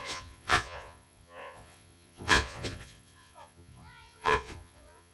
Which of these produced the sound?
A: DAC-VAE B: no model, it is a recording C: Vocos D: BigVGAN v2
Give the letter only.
C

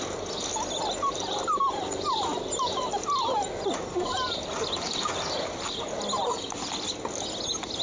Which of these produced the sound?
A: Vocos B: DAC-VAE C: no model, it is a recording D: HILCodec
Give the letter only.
C